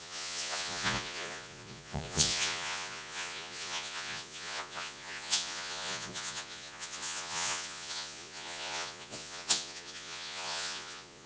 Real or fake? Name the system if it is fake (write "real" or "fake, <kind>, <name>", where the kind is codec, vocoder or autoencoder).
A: fake, vocoder, Vocos